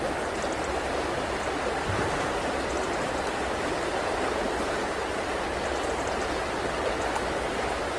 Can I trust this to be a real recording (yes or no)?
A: yes